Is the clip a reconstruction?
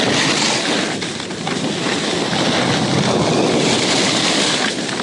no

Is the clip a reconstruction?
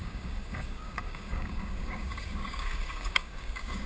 yes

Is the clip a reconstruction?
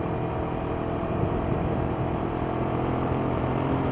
yes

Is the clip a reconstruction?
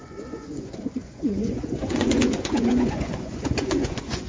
yes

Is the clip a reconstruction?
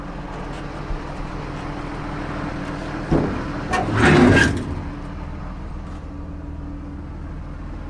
no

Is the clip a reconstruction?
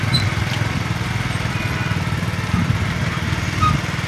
no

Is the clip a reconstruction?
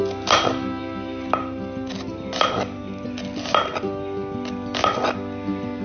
no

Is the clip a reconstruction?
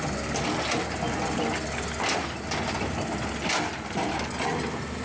no